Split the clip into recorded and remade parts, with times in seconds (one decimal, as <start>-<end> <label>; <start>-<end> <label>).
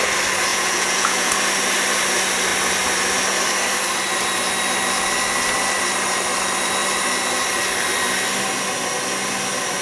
0.0-0.5 recorded; 0.5-1.3 remade; 1.3-9.8 recorded